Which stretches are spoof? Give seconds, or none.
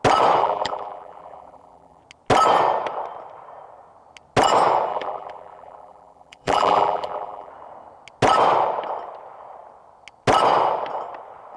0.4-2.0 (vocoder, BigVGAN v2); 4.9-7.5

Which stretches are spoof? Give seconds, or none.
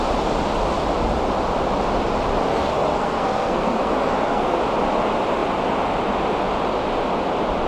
2.5-4.6 (codec, SNAC)